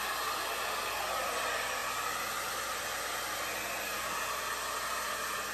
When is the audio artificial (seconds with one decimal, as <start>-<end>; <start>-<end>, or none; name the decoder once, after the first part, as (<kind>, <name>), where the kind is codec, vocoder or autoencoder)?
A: none